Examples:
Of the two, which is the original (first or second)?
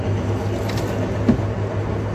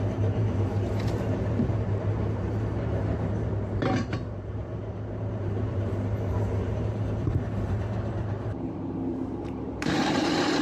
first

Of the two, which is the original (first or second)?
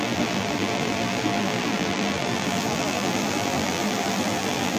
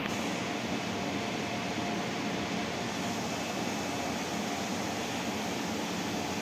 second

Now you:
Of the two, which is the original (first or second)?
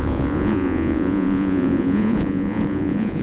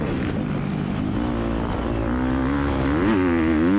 second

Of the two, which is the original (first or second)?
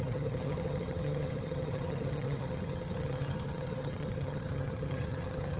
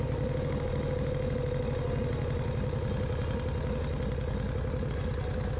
second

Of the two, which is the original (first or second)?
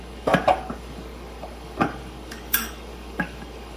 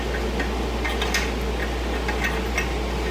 second